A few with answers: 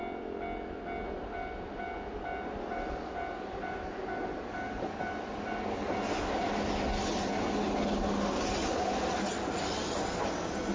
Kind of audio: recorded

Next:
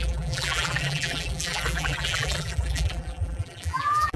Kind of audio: remade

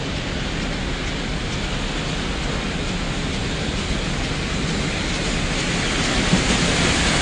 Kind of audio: recorded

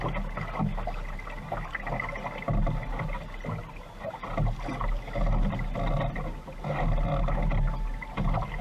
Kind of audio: recorded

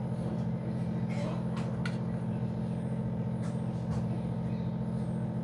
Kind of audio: recorded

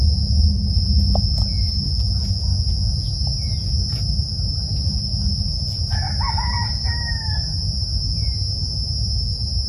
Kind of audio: recorded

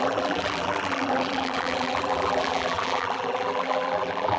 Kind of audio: remade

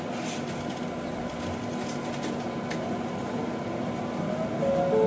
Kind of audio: recorded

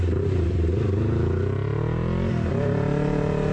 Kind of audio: recorded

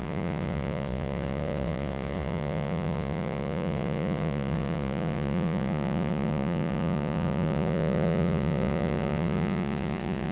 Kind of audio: remade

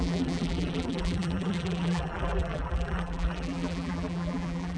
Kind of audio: remade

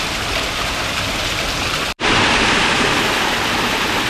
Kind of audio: recorded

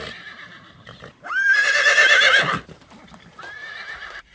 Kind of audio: remade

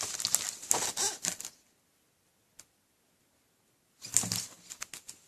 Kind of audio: recorded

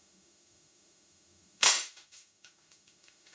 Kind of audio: remade